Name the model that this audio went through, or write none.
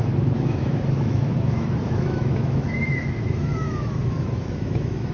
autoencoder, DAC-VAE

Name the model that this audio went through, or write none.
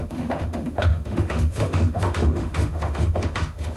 autoencoder, DAC-VAE